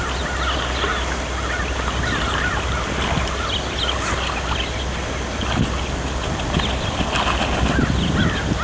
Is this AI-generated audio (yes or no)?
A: no